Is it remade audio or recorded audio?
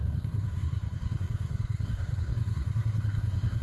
remade